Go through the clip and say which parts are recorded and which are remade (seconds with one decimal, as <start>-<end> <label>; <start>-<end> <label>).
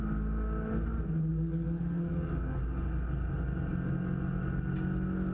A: 0.0-1.3 recorded; 1.3-2.6 remade; 2.6-5.3 recorded